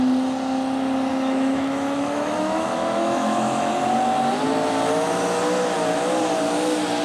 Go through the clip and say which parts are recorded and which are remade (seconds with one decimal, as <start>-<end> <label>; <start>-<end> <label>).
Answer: 0.0-1.1 recorded; 1.1-3.7 remade; 3.7-7.0 recorded